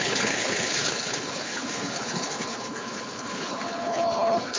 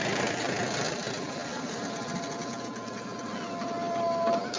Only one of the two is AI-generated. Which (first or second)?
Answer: first